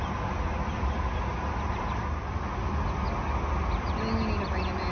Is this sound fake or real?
real